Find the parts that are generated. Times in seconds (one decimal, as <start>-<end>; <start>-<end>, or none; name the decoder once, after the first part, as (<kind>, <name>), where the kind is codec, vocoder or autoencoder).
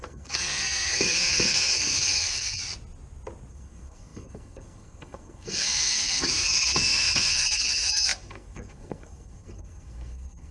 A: 0.0-2.6 (codec, SNAC); 3.5-10.5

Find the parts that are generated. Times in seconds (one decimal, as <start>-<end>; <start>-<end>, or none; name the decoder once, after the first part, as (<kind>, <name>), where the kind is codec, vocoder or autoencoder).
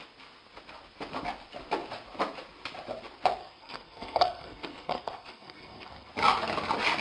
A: 3.4-6.1 (codec, SNAC)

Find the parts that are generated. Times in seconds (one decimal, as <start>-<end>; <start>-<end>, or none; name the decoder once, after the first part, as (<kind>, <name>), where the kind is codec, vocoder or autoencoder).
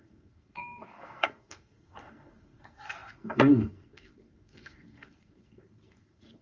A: 0.0-6.4 (codec, SNAC)